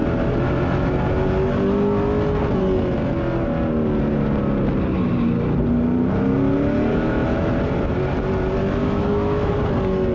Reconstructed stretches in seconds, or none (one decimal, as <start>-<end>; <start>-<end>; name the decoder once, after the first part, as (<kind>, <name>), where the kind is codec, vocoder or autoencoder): 6.9-7.5 (autoencoder, DAC-VAE); 8.8-9.5